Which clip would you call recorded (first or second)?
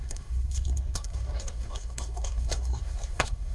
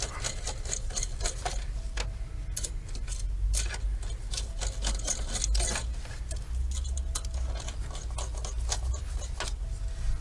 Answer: second